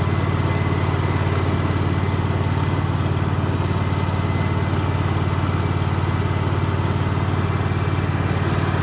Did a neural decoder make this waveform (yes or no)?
no